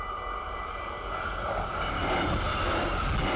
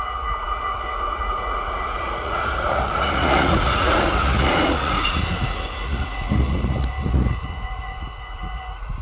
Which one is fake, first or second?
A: second